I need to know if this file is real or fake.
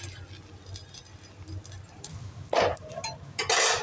real